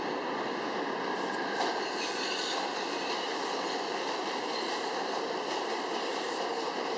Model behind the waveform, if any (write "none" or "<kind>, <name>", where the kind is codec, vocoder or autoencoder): none